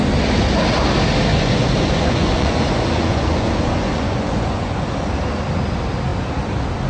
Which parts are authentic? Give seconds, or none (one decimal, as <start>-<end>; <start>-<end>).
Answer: 0.0-1.3; 4.8-6.9